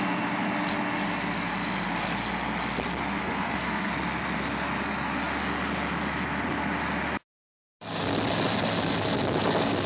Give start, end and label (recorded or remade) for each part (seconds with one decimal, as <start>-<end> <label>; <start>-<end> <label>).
0.0-3.2 recorded; 3.2-3.9 remade; 3.9-9.9 recorded